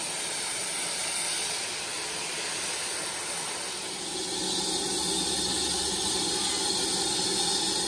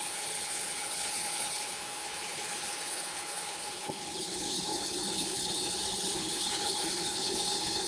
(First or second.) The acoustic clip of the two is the first